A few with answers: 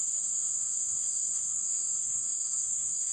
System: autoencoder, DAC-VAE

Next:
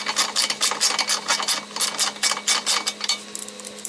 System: none